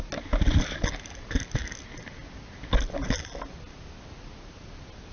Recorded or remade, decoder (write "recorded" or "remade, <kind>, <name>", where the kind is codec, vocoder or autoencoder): recorded